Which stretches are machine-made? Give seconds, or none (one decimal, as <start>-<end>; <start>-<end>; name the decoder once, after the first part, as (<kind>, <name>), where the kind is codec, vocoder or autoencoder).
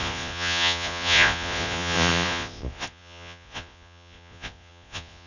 0.0-5.3 (vocoder, Vocos)